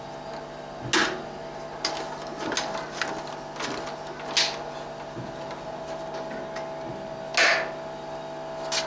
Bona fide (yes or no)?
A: yes